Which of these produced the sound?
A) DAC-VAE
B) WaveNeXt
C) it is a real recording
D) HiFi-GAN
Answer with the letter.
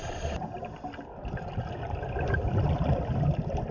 C